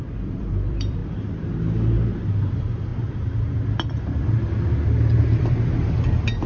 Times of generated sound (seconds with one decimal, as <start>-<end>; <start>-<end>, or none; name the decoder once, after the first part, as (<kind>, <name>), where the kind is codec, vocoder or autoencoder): 0.0-1.0 (vocoder, BigVGAN v2); 2.4-2.9